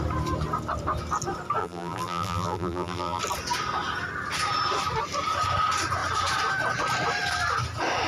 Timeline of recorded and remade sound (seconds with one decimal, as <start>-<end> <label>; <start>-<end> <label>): 0.0-1.6 recorded; 1.6-3.2 remade; 3.2-8.1 recorded